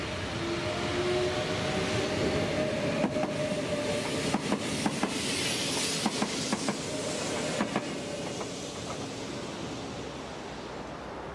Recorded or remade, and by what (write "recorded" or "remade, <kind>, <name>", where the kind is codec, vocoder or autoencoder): recorded